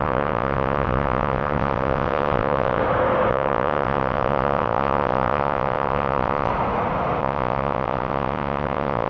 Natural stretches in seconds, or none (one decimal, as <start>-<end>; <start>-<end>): 2.8-3.3; 6.5-7.2